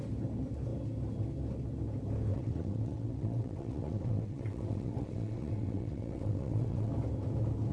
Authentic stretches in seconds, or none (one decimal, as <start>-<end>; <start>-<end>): 0.0-2.3; 6.9-7.7